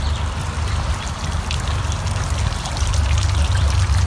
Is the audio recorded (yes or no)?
yes